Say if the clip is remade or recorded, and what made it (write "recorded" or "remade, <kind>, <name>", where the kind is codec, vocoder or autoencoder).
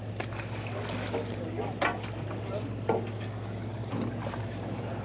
recorded